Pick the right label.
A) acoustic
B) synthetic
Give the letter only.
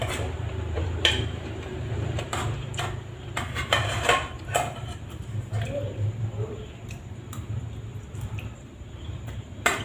B